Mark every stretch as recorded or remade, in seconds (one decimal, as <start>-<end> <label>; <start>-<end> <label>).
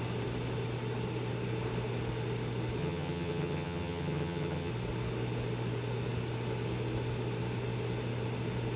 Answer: 0.0-2.8 recorded; 2.8-4.7 remade; 4.7-8.8 recorded